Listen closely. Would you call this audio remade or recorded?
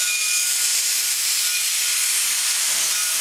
recorded